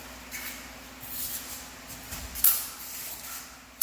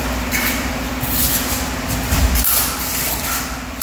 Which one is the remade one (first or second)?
second